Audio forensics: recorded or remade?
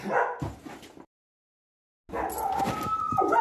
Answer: recorded